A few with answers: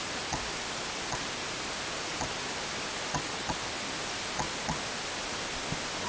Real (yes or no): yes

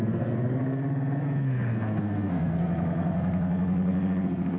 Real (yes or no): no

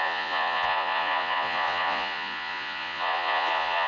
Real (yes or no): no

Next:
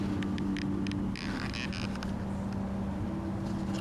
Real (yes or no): yes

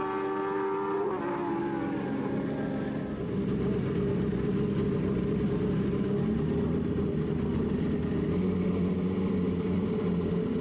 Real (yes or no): yes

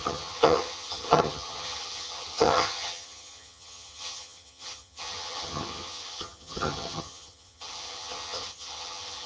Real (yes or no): no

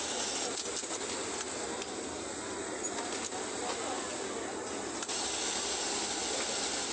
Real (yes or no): yes